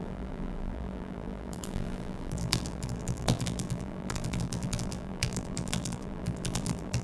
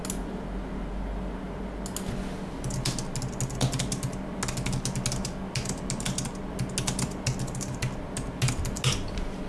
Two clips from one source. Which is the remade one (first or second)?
first